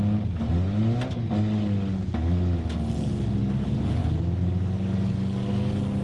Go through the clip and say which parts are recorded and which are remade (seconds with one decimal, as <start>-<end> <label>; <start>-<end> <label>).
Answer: 0.0-6.0 recorded